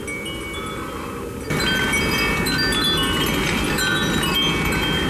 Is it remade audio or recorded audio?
recorded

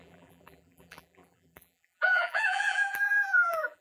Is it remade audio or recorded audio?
remade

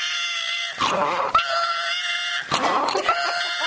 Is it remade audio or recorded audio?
recorded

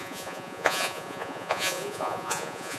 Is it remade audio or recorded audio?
remade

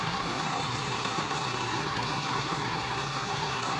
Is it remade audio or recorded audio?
remade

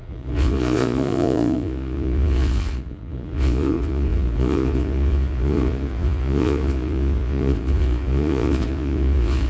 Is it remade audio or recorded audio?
remade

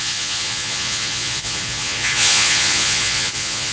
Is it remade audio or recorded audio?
remade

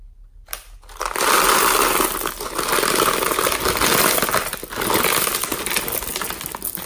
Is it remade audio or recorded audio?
recorded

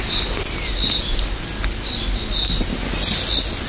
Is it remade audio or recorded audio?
recorded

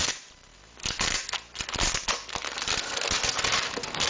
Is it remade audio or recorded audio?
recorded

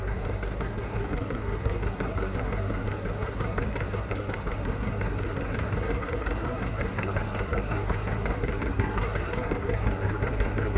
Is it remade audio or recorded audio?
remade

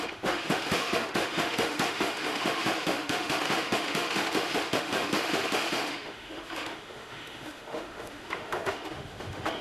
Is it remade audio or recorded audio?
remade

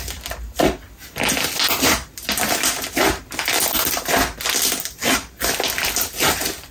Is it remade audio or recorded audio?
recorded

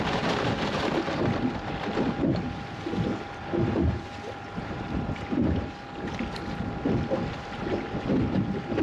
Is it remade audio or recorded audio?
recorded